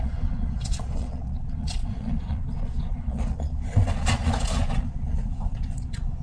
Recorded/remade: remade